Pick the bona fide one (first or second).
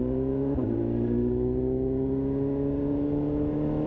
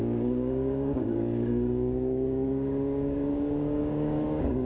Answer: first